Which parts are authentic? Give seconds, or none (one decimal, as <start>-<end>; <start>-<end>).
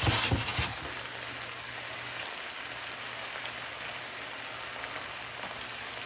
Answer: 0.0-6.1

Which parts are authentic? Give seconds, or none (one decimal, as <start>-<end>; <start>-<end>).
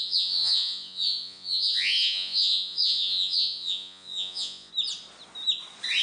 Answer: 4.7-6.0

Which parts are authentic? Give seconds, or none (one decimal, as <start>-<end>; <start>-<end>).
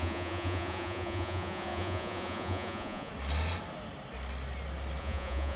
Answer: 3.1-5.0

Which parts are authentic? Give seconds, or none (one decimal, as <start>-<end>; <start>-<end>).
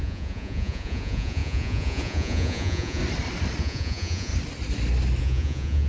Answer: 3.0-3.6; 4.3-5.2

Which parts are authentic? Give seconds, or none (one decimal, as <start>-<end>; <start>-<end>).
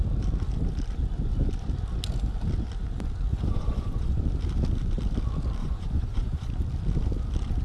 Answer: 0.0-3.3; 4.2-5.6; 6.5-7.6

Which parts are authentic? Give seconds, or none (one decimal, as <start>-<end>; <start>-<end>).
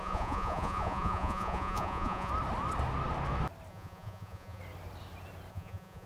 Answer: 2.3-3.7; 4.6-5.5